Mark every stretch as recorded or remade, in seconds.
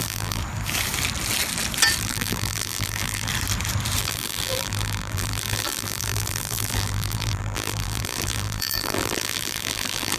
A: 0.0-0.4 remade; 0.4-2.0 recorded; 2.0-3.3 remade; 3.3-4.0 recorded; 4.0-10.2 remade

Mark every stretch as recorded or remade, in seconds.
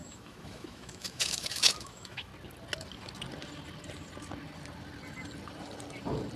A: 0.0-2.3 remade; 2.3-6.4 recorded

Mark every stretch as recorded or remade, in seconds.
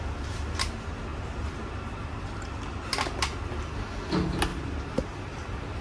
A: 0.0-5.8 recorded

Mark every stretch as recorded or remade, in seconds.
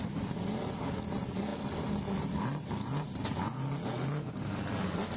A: 0.0-5.2 recorded